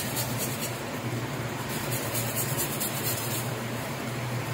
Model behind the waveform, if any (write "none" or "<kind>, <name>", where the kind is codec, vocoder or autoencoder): vocoder, BigVGAN v2